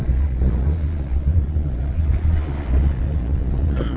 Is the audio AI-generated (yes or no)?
yes